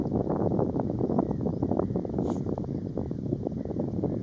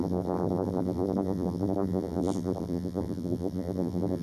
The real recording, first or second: first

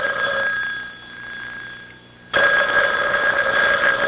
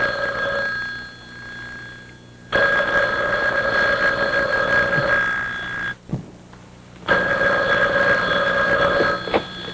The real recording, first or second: second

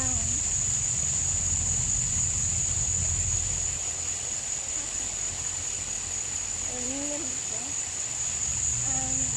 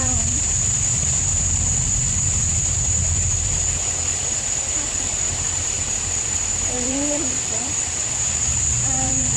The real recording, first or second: first